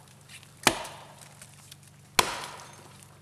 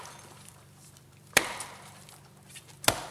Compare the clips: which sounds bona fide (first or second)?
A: first